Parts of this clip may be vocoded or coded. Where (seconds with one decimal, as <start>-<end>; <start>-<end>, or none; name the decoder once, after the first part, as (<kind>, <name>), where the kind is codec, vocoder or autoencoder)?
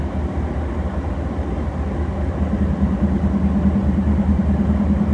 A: none